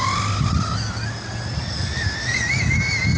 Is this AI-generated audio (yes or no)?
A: no